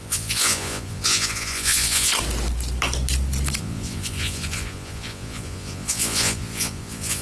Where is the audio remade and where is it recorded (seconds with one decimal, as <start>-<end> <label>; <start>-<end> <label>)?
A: 0.0-2.1 remade; 2.1-3.6 recorded; 3.6-7.2 remade